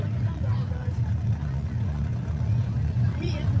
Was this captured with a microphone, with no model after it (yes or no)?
no